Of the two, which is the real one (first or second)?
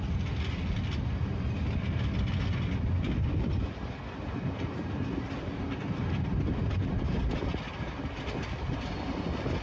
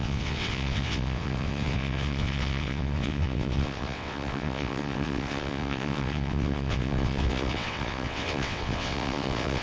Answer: first